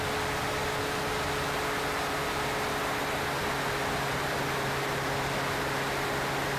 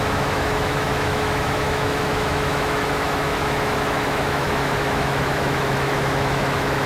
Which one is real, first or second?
first